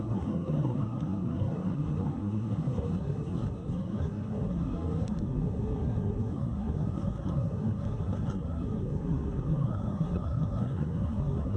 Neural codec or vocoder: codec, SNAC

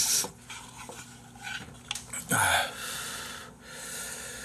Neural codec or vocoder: none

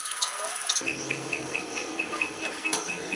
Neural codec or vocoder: codec, SNAC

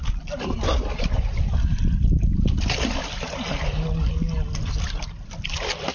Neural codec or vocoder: none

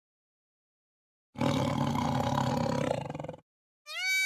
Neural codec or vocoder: none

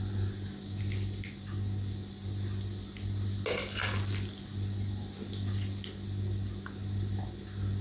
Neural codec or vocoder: none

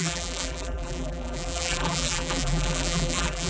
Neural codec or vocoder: vocoder, BigVGAN v2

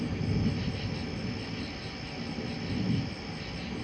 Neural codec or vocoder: none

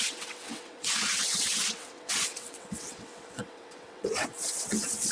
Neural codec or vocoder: vocoder, WaveNeXt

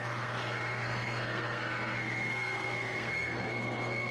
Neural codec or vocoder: codec, SNAC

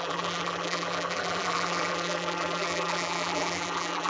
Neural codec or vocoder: vocoder, BigVGAN v2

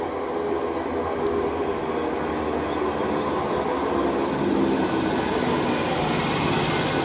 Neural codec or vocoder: none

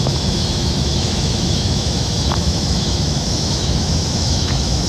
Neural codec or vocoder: autoencoder, DAC-VAE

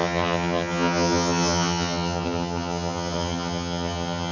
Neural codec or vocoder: vocoder, HiFi-GAN